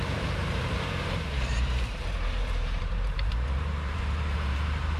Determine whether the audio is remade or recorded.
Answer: remade